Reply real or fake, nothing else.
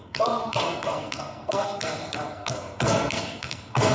fake